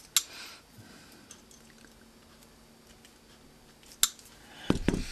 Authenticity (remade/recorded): recorded